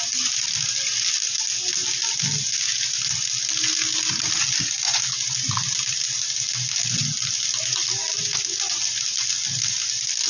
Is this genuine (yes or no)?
yes